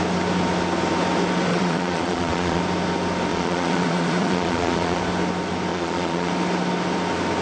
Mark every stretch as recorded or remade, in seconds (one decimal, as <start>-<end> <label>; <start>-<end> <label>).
0.0-1.5 recorded; 1.5-2.6 remade; 2.6-3.3 recorded; 3.3-5.0 remade; 5.0-5.7 recorded; 5.7-6.3 remade; 6.3-7.4 recorded